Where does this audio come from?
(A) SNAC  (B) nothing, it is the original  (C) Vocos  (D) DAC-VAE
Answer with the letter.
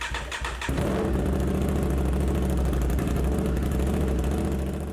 B